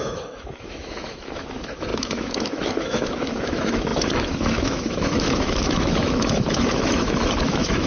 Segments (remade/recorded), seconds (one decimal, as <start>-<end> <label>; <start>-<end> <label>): 0.0-7.9 remade

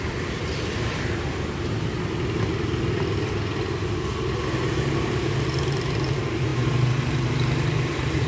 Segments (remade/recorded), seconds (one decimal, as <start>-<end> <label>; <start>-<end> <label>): 0.0-8.3 recorded

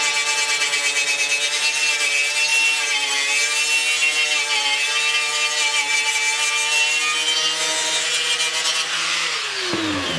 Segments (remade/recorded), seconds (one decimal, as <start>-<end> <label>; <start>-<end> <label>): 0.0-10.2 recorded

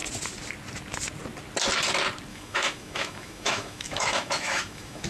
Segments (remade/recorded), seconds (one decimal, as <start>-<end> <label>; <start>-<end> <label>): 0.0-2.3 recorded; 2.3-5.1 remade

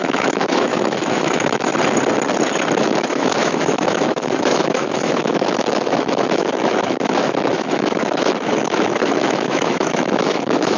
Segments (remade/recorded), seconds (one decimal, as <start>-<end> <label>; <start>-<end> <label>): 0.0-1.7 remade; 1.7-2.8 recorded; 2.8-10.8 remade

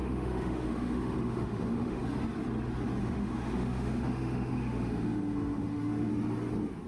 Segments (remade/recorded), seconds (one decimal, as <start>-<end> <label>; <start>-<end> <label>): 0.0-2.0 remade; 2.0-3.0 recorded; 3.0-6.1 remade; 6.1-6.9 recorded